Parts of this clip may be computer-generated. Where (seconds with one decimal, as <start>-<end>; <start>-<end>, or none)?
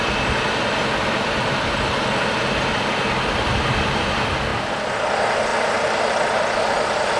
none